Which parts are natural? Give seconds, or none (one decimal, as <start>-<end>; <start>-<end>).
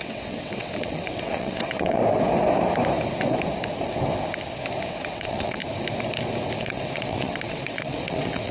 2.0-4.9; 5.6-6.6